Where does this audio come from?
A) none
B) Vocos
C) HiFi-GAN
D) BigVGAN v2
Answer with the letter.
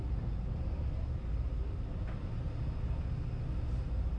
A